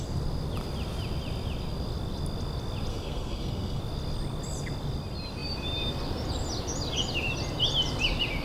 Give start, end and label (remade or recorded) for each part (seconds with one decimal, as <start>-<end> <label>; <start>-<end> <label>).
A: 0.0-2.9 recorded; 2.9-3.8 remade; 3.8-8.4 recorded